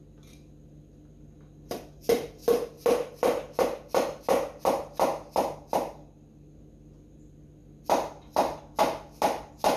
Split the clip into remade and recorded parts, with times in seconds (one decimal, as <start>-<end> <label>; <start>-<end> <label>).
0.0-9.8 recorded